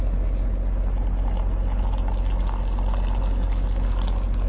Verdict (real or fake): real